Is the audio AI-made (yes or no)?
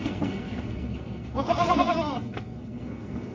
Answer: yes